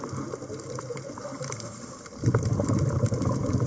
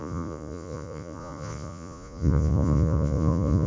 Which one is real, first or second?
first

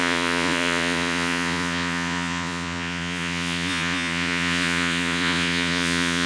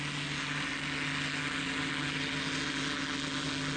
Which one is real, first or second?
second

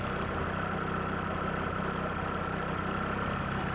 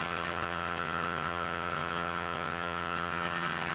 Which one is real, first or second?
first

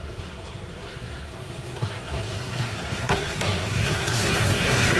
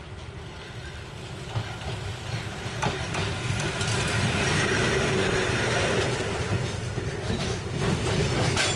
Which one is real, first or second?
second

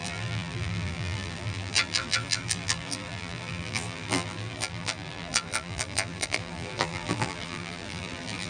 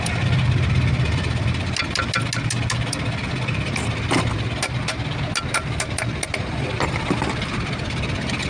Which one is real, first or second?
second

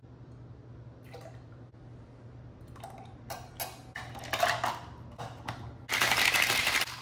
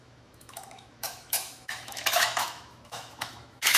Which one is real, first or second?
first